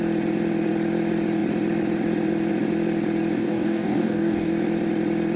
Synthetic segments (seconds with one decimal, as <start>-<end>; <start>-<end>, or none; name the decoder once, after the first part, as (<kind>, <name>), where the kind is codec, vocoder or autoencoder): 3.4-4.5 (codec, DAC)

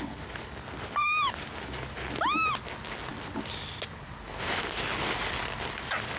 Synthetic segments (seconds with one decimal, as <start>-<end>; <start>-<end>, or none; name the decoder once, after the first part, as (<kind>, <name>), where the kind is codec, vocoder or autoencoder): none

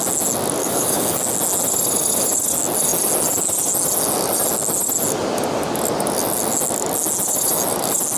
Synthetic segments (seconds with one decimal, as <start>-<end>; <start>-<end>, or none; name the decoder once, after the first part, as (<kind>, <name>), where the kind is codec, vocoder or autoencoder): 0.6-1.3 (codec, DAC)